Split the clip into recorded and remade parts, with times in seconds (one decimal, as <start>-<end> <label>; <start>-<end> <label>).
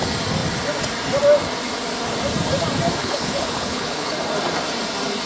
0.0-3.0 recorded; 3.0-4.1 remade; 4.1-5.3 recorded